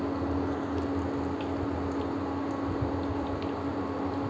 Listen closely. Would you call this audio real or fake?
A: real